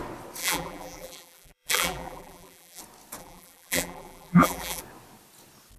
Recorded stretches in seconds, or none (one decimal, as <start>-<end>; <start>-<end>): 0.0-0.4; 2.8-3.2; 4.8-5.8